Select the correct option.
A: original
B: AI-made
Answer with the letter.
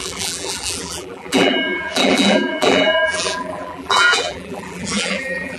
B